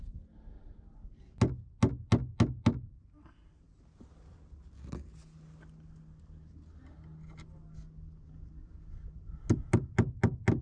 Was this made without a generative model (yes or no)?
yes